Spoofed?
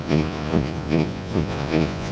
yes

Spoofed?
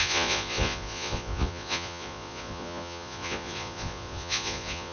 yes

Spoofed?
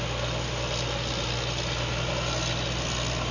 no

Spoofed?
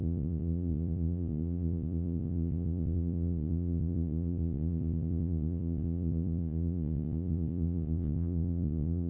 yes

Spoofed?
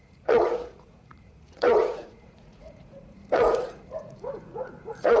yes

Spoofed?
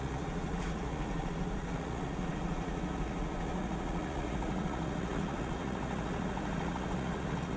yes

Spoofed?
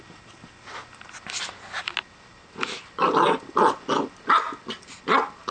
no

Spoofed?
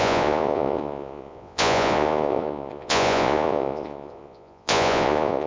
yes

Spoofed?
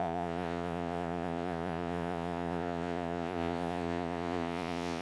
yes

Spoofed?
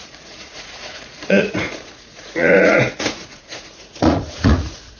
yes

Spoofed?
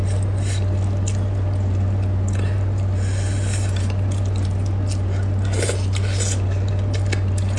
no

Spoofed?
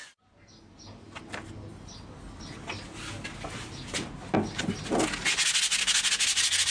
no